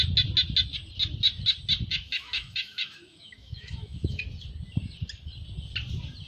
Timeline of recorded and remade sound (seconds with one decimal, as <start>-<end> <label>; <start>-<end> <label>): 0.0-1.9 recorded; 1.9-4.2 remade; 4.2-6.3 recorded